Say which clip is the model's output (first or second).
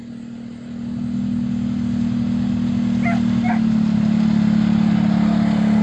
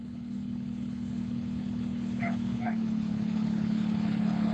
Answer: second